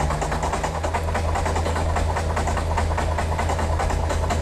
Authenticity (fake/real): real